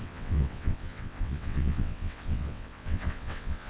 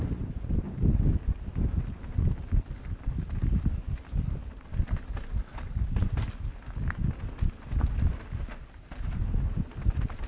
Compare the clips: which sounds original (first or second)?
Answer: second